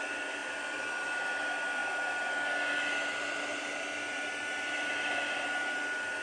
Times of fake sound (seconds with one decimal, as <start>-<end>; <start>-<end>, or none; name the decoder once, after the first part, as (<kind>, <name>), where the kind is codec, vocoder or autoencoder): none